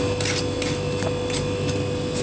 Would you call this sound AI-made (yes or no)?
yes